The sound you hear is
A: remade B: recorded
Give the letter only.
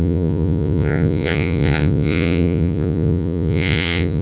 A